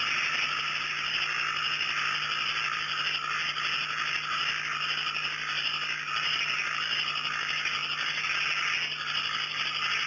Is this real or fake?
real